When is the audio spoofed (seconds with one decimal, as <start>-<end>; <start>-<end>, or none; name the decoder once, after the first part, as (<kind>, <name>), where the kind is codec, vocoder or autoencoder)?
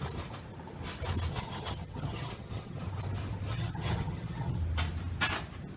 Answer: 1.3-2.8 (vocoder, HiFi-GAN); 3.5-4.6